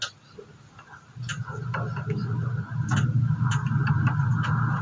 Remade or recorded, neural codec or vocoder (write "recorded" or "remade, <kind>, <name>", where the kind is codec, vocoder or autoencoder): recorded